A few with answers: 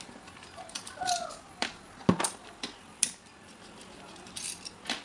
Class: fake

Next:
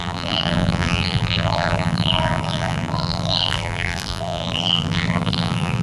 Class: fake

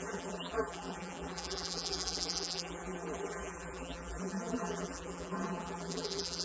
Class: fake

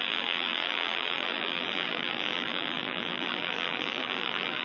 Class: fake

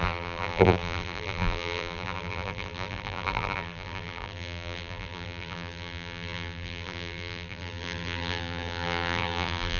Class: fake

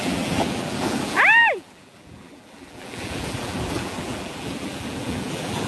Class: fake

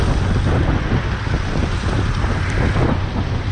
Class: real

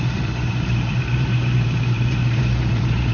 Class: fake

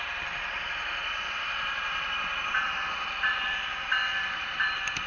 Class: fake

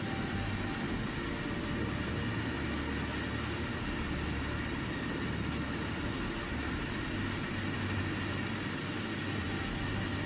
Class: real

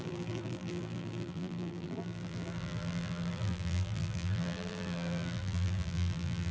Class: fake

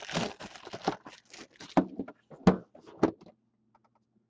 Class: real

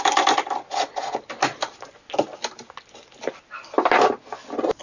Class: real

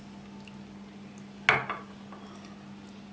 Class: real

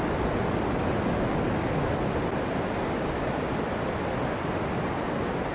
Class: real